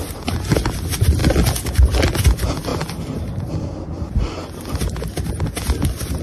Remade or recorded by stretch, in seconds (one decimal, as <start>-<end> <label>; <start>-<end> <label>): 0.0-6.2 recorded